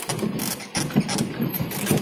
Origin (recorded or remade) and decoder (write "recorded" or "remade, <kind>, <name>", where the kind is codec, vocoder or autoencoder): recorded